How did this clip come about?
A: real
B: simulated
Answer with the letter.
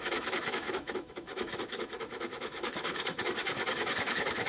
B